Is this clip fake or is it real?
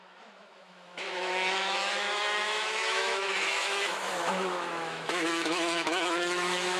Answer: fake